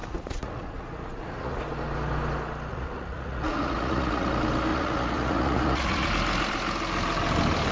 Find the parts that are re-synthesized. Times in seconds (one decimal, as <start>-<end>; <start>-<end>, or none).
0.0-1.6; 2.7-4.3; 4.7-6.1